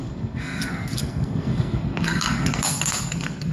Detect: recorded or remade remade